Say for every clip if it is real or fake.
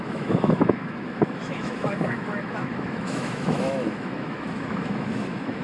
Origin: fake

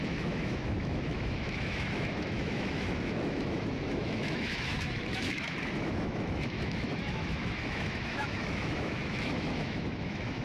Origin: fake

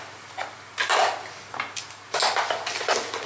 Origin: real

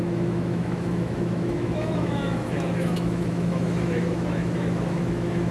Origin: fake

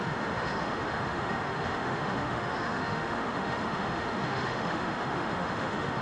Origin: fake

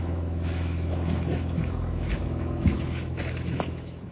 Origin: fake